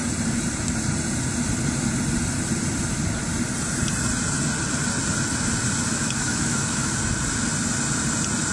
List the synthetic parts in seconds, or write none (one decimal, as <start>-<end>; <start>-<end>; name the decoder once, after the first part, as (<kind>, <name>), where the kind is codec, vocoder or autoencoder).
5.9-6.9 (autoencoder, DAC-VAE)

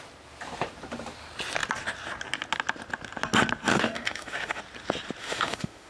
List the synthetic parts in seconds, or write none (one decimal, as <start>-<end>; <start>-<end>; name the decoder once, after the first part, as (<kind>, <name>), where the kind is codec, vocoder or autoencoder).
3.7-4.6 (autoencoder, DAC-VAE); 5.2-5.9